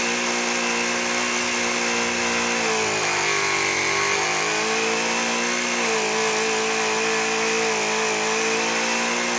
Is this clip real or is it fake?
real